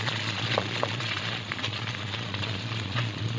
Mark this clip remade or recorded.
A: remade